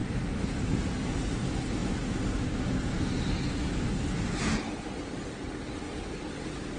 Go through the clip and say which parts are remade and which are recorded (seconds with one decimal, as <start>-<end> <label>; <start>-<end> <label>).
0.0-6.8 recorded